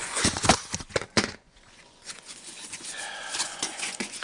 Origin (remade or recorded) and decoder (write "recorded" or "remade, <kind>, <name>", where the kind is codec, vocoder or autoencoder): remade, vocoder, Vocos